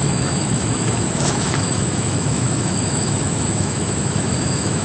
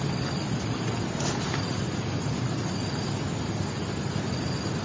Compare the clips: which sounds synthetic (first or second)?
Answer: first